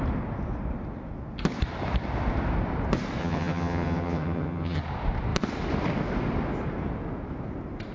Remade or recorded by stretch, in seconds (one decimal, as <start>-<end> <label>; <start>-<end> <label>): 0.0-3.2 recorded; 3.2-4.8 remade; 4.8-7.9 recorded

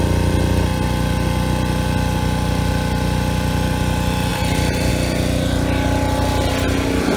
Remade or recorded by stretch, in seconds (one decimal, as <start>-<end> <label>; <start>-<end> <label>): 0.0-4.3 recorded; 4.3-4.9 remade; 4.9-7.2 recorded

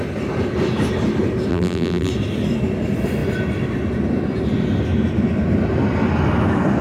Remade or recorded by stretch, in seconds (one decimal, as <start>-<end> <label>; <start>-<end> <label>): 0.0-1.5 recorded; 1.5-2.1 remade; 2.1-6.8 recorded

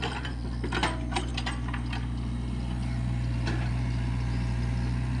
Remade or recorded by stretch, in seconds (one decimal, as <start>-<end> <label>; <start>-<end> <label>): 0.0-5.2 recorded

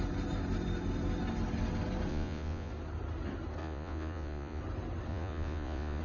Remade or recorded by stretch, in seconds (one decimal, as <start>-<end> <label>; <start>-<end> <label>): 0.0-2.1 recorded; 2.1-2.7 remade; 2.7-3.6 recorded; 3.6-4.6 remade; 4.6-5.1 recorded; 5.1-6.0 remade